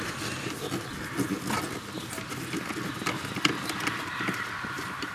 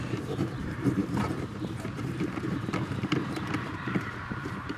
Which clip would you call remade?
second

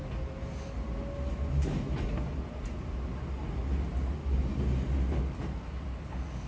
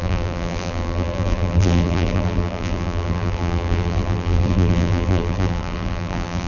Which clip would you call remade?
second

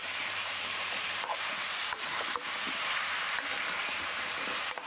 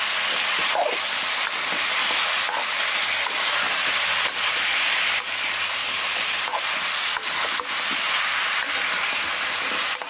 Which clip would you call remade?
first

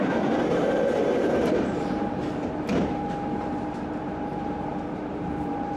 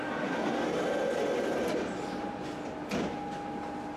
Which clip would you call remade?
first